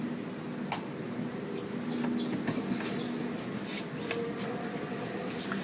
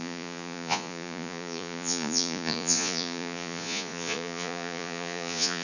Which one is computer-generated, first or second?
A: second